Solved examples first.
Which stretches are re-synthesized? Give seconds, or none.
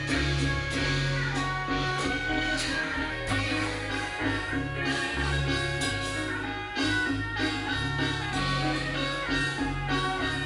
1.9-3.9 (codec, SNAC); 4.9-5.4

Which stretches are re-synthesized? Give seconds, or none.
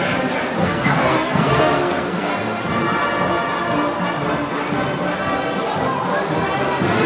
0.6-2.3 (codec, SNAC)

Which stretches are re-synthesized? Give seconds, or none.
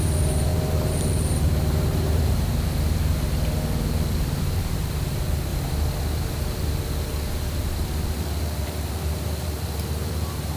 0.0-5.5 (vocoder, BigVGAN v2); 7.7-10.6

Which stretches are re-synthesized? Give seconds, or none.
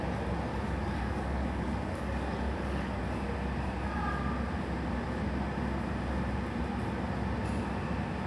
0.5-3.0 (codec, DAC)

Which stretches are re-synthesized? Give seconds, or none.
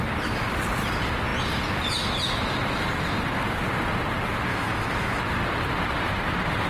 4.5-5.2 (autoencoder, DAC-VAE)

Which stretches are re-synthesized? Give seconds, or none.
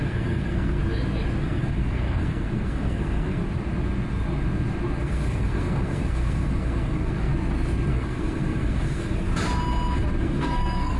0.0-0.8 (codec, SNAC); 1.4-3.4; 5.0-7.3; 7.9-9.3; 10.2-11.0